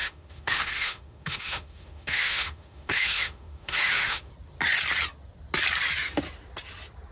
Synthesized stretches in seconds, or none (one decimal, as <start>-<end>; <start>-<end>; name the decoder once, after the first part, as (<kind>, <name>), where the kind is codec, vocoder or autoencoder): 0.0-4.3 (autoencoder, DAC-VAE)